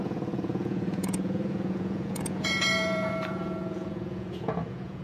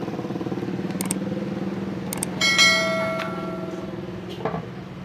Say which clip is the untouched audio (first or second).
second